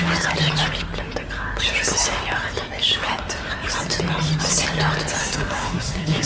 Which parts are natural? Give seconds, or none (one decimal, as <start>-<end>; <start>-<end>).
0.0-5.2